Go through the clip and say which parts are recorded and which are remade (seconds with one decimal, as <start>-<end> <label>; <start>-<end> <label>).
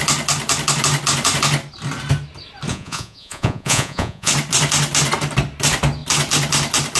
0.0-2.7 recorded; 2.7-4.3 remade; 4.3-7.0 recorded